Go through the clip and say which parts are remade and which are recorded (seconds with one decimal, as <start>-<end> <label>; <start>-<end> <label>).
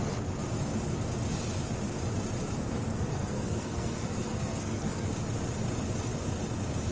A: 0.0-2.9 recorded; 2.9-5.1 remade; 5.1-6.9 recorded